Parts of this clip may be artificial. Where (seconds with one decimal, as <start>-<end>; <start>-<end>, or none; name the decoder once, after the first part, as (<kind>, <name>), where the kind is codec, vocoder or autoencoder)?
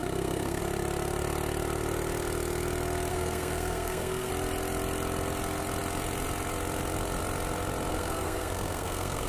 0.0-0.6 (codec, SNAC); 3.1-4.3; 7.9-9.3